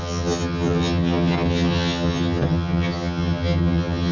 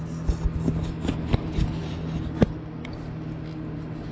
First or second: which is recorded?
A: second